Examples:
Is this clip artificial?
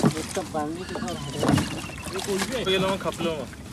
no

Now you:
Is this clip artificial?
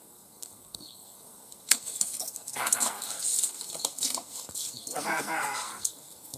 yes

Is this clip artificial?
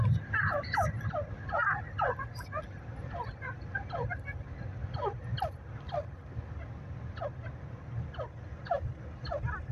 no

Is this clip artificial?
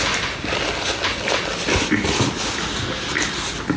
no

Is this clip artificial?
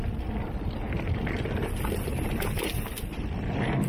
no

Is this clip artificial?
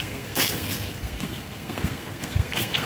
yes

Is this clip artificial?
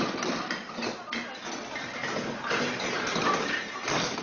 no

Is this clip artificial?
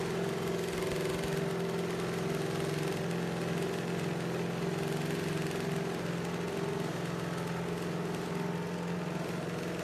no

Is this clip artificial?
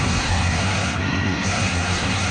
yes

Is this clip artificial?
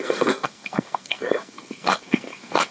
yes